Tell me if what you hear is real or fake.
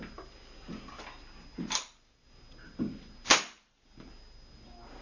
real